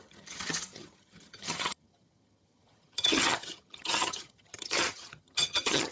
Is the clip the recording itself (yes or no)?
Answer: no